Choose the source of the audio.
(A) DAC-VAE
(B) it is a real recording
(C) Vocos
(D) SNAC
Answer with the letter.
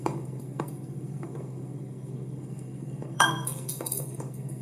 D